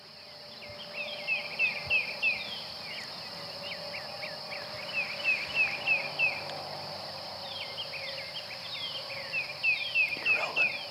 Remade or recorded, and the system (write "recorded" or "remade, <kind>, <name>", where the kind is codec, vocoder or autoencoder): recorded